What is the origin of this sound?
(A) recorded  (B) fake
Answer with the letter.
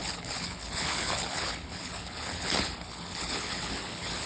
B